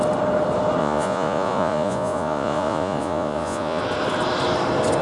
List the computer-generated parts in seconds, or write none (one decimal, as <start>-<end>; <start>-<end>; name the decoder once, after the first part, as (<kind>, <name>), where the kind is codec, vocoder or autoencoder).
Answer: 0.8-3.8 (vocoder, Vocos)